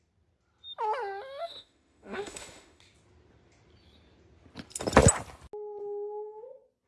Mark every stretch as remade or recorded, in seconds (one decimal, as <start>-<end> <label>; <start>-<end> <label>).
0.0-1.4 recorded; 1.4-2.8 remade; 2.8-6.9 recorded